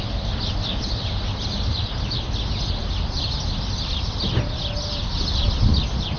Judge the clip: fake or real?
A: real